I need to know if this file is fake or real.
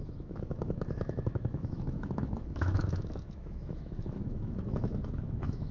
fake